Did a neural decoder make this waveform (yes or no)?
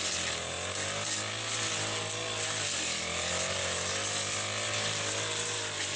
no